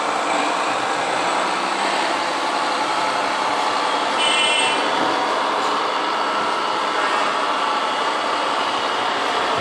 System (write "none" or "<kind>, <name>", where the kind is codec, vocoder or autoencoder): vocoder, BigVGAN v2